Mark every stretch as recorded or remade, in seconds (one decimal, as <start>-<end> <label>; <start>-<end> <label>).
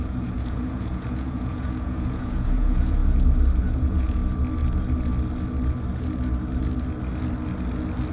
0.0-3.0 remade; 3.0-3.6 recorded; 3.6-4.2 remade; 4.2-8.1 recorded